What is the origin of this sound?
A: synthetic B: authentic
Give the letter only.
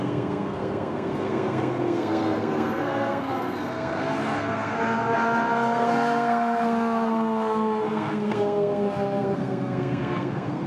A